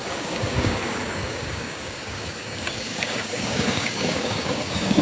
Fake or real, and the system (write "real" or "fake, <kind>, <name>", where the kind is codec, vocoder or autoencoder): fake, codec, DAC